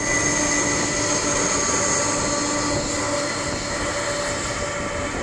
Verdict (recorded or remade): recorded